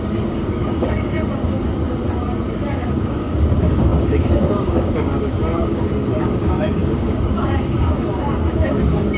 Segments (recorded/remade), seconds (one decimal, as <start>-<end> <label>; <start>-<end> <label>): 0.0-1.7 remade; 1.7-2.7 recorded; 2.7-9.2 remade